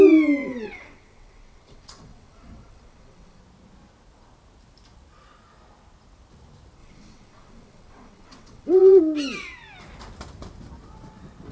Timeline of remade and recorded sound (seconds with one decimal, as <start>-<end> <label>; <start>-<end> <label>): 0.0-0.4 recorded; 0.4-3.4 remade; 3.4-6.8 recorded; 6.8-9.0 remade; 9.0-11.5 recorded

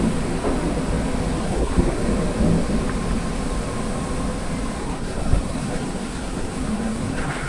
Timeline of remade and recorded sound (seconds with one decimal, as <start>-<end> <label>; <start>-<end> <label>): 0.0-1.4 recorded; 1.4-2.0 remade; 2.0-4.8 recorded; 4.8-7.5 remade

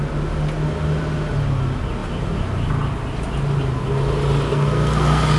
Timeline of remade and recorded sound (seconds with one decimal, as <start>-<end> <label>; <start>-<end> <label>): 0.0-4.5 recorded; 4.5-5.4 remade

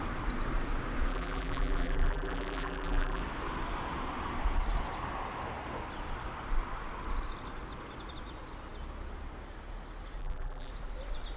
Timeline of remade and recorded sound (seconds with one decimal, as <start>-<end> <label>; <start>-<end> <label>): 0.0-1.1 recorded; 1.1-3.2 remade; 3.2-10.2 recorded; 10.2-10.7 remade; 10.7-11.4 recorded

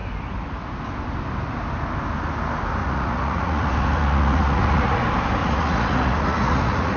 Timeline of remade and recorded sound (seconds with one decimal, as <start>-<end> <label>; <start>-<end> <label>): 0.0-2.8 recorded; 2.8-5.0 remade; 5.0-5.4 recorded; 5.4-7.0 remade